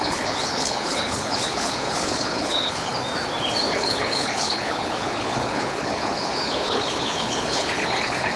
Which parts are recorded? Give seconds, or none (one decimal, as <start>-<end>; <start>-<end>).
2.9-3.7